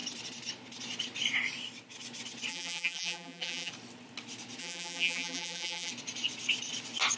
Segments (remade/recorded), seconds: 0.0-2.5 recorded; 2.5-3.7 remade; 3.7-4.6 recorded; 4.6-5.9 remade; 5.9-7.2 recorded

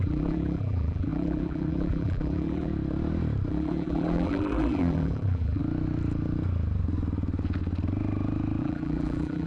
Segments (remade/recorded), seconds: 0.0-2.7 remade; 2.7-3.5 recorded; 3.5-5.6 remade; 5.6-8.6 recorded; 8.6-9.5 remade